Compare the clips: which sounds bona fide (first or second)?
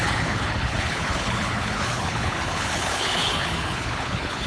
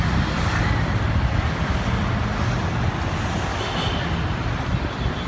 second